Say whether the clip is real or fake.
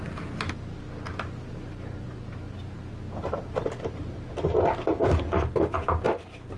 real